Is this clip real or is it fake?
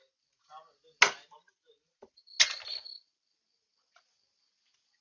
real